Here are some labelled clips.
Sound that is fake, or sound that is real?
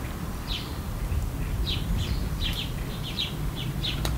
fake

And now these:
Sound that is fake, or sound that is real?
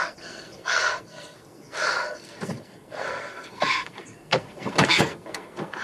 fake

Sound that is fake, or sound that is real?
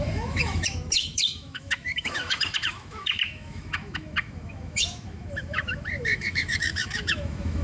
fake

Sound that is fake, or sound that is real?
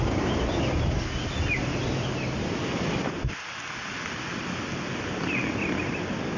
real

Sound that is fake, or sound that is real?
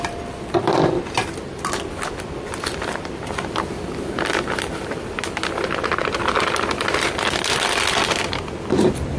fake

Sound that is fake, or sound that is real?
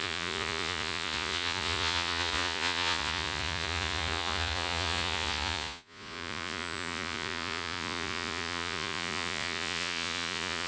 fake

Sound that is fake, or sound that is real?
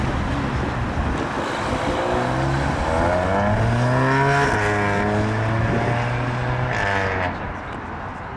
real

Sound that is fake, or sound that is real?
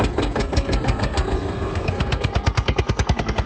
fake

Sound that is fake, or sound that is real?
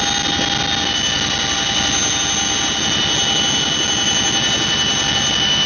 real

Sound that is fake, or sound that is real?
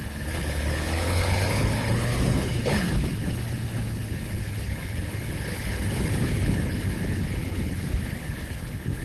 fake